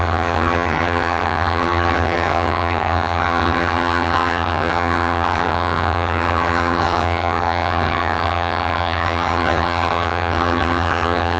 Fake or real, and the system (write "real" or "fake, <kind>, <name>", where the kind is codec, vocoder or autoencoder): fake, vocoder, HiFi-GAN